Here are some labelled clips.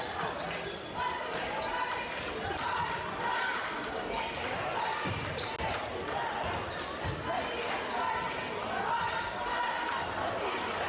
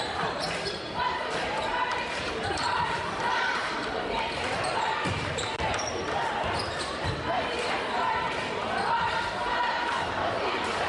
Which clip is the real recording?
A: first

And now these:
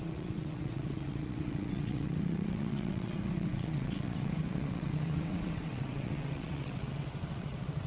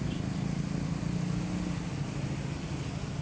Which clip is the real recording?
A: second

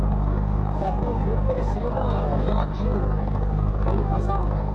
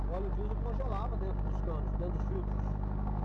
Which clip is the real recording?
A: second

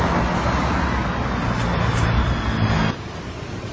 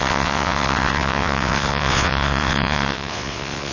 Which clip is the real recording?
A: first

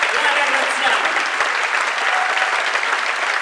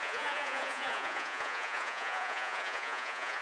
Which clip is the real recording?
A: first